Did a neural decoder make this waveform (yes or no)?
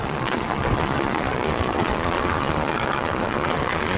yes